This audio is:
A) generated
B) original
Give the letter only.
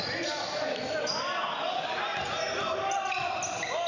B